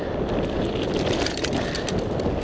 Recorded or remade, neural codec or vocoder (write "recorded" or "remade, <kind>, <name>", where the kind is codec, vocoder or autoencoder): recorded